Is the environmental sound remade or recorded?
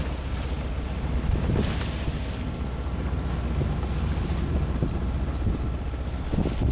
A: recorded